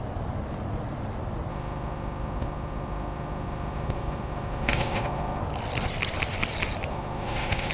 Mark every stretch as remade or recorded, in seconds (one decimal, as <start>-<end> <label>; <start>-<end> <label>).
0.0-1.5 recorded; 1.5-5.4 remade; 5.4-6.9 recorded; 6.9-7.7 remade